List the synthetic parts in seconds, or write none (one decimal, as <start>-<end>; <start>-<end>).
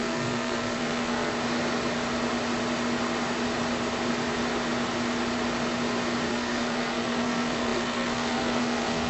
0.0-1.3; 6.3-9.1